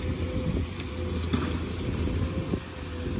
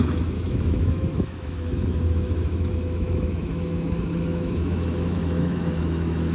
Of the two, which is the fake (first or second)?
second